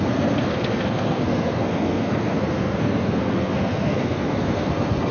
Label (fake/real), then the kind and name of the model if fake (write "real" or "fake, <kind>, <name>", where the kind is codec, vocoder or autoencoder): fake, codec, SNAC